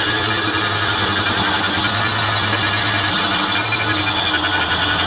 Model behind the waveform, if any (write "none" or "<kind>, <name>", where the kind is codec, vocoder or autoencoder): none